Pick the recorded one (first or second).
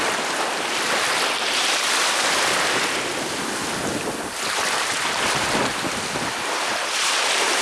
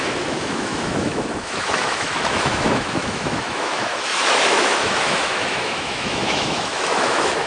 first